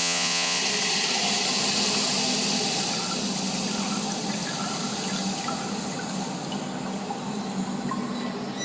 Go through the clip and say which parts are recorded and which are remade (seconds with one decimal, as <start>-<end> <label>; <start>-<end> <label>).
0.0-0.6 remade; 0.6-8.6 recorded